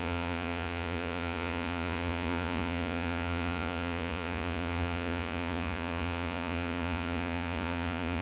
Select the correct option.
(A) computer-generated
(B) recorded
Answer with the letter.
A